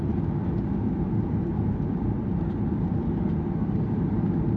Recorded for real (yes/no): yes